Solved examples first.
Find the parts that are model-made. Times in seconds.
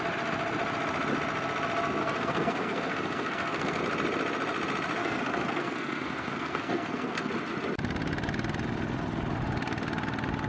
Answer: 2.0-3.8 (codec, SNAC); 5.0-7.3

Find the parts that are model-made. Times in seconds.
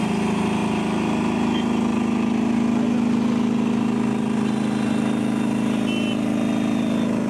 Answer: none